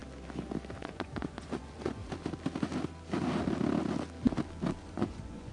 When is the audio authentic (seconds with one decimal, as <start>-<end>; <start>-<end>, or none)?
0.0-0.8; 2.0-4.8